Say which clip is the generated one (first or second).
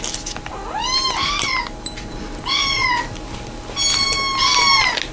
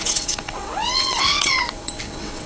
second